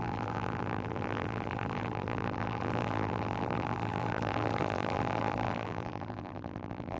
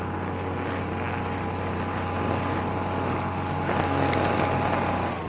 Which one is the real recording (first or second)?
second